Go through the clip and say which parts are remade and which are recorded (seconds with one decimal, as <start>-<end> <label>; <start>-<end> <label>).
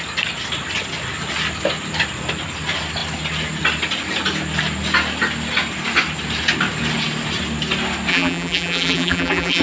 0.0-8.1 recorded; 8.1-9.6 remade